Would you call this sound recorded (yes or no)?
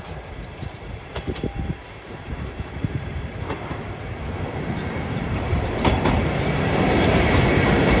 no